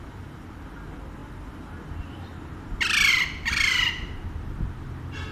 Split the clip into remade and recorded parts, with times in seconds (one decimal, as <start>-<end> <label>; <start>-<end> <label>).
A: 0.0-1.2 remade; 1.2-3.1 recorded; 3.1-5.3 remade